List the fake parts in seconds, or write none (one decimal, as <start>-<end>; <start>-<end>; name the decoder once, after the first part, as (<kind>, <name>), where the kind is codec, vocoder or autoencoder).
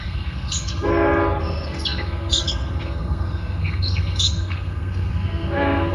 0.0-0.9 (codec, SNAC); 1.4-5.9